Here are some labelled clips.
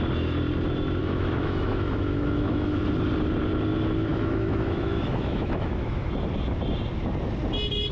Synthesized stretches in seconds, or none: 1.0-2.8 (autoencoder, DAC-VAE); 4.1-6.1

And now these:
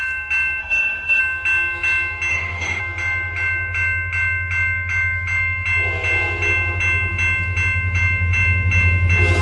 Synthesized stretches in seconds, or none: 0.6-1.2 (autoencoder, DAC-VAE); 2.3-2.8